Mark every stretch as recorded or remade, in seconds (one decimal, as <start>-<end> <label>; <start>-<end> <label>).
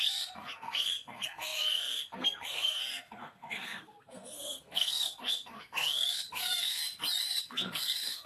0.0-6.8 remade; 6.8-7.4 recorded; 7.4-8.3 remade